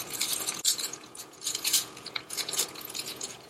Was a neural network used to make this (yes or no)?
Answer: yes